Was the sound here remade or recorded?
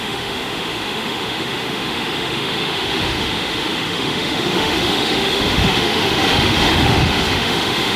remade